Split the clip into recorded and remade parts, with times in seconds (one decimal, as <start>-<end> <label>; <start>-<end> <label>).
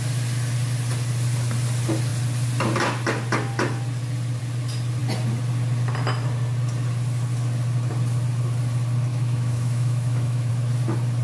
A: 0.0-9.1 recorded; 9.1-10.5 remade; 10.5-11.2 recorded